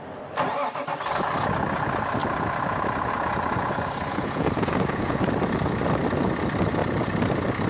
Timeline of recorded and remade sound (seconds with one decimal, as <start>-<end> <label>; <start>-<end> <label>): 0.0-4.1 recorded; 4.1-5.2 remade; 5.2-7.7 recorded